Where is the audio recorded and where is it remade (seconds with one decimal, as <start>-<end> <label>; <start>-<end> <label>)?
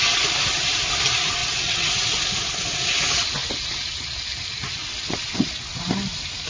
0.0-1.4 recorded; 1.4-1.9 remade; 1.9-4.8 recorded; 4.8-5.8 remade; 5.8-6.5 recorded